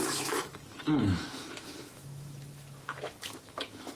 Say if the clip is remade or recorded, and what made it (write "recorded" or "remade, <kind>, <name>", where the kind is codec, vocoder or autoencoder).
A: remade, autoencoder, DAC-VAE